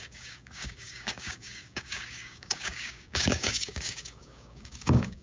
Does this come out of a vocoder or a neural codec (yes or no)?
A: yes